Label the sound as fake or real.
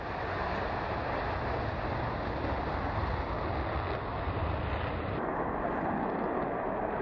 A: real